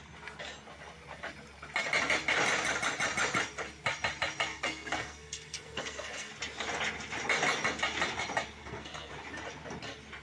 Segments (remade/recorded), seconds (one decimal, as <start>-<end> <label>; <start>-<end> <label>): 0.0-4.5 recorded; 4.5-6.3 remade; 6.3-8.6 recorded; 8.6-9.1 remade; 9.1-10.2 recorded